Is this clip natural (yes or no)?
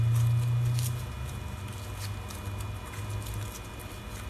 yes